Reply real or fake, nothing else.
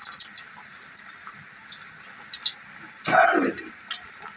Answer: real